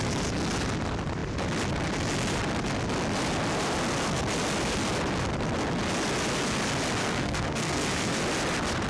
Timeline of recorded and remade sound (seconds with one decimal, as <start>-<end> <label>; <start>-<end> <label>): 0.0-7.0 recorded; 7.0-8.2 remade; 8.2-8.9 recorded